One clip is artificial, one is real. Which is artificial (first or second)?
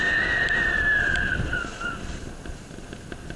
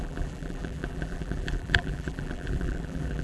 second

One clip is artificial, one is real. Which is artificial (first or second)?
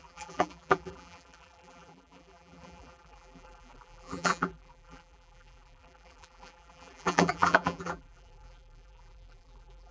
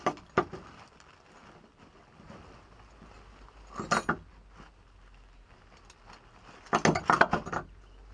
first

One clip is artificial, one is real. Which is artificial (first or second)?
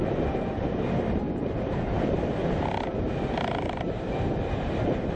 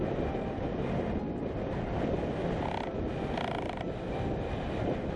first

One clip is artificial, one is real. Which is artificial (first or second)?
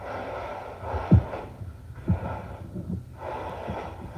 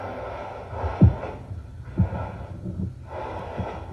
first